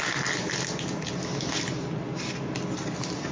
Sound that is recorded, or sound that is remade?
recorded